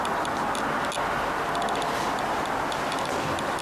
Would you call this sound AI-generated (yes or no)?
no